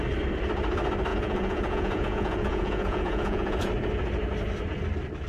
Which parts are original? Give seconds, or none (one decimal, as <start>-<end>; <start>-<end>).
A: 0.0-1.1; 3.7-5.3